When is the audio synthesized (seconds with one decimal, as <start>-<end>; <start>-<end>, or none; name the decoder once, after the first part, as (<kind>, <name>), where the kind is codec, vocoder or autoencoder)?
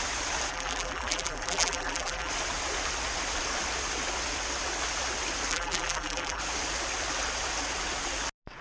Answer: 0.5-2.3 (vocoder, BigVGAN v2); 5.5-6.4